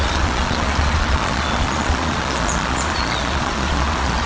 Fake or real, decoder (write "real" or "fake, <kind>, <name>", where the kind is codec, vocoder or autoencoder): fake, vocoder, Vocos